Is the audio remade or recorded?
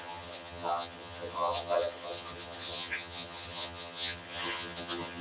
remade